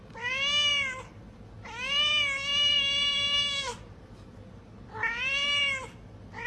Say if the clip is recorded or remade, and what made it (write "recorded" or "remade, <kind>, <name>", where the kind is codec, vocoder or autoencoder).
remade, vocoder, BigVGAN v2